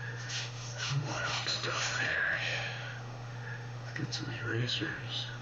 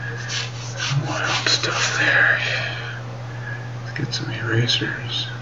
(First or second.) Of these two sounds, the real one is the second